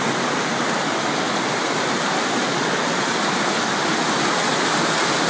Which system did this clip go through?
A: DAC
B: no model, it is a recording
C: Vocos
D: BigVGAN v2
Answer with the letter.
B